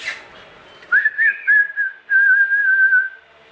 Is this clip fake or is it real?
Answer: real